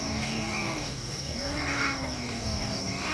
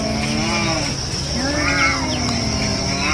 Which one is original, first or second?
second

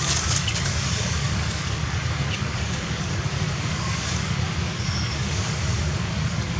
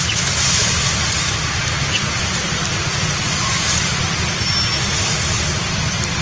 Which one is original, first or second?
second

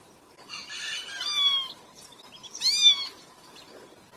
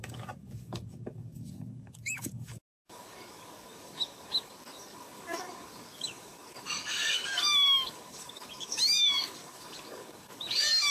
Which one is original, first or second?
first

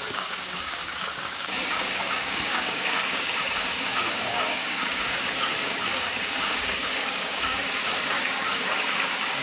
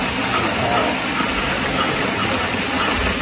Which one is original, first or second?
second